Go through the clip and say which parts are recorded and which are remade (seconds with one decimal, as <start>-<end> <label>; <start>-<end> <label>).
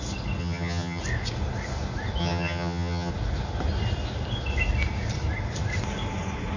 0.0-0.4 recorded; 0.4-1.0 remade; 1.0-2.2 recorded; 2.2-3.1 remade; 3.1-6.6 recorded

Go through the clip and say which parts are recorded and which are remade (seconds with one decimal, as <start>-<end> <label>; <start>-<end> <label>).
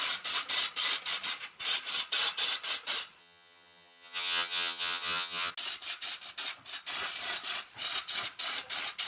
0.0-3.2 recorded; 3.2-5.5 remade; 5.5-9.1 recorded